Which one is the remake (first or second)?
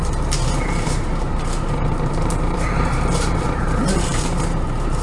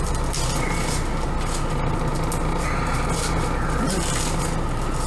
first